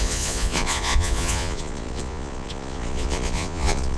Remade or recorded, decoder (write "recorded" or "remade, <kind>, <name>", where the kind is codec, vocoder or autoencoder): remade, vocoder, Vocos